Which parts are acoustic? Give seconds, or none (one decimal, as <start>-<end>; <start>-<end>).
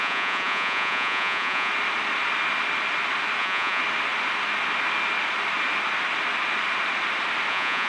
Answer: 1.7-3.4; 3.8-7.5